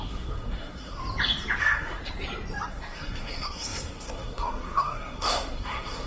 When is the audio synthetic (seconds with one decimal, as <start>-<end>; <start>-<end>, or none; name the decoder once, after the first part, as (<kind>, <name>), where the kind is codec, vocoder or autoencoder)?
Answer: 0.0-1.0 (codec, SNAC); 1.6-2.0; 2.7-6.1